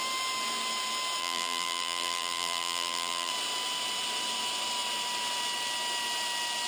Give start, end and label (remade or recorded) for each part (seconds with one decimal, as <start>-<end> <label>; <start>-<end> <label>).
0.0-1.2 recorded; 1.2-3.3 remade; 3.3-6.7 recorded